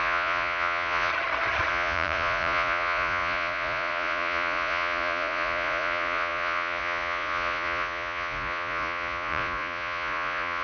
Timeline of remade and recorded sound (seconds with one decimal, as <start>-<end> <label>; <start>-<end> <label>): 0.0-1.1 remade; 1.1-1.7 recorded; 1.7-10.6 remade